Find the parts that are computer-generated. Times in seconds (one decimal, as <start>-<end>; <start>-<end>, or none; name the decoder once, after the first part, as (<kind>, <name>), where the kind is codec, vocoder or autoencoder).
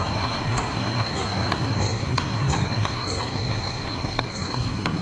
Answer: 0.0-5.0 (codec, SNAC)